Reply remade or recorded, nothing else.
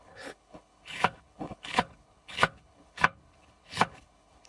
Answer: remade